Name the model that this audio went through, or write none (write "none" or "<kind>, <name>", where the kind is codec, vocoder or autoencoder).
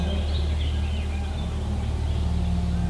none